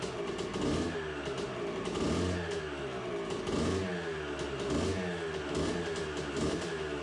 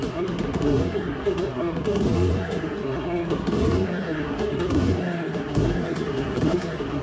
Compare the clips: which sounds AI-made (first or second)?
second